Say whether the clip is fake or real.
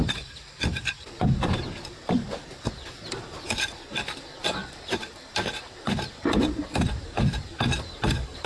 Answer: fake